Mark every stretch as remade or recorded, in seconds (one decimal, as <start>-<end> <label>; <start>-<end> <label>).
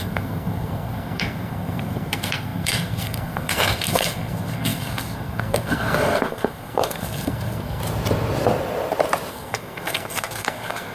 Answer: 0.0-7.8 remade; 7.8-9.3 recorded; 9.3-10.9 remade